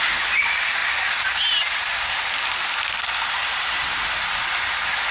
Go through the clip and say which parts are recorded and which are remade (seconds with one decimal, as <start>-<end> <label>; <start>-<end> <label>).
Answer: 0.0-3.4 recorded; 3.4-3.9 remade; 3.9-5.1 recorded